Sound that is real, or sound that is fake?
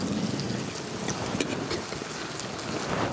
real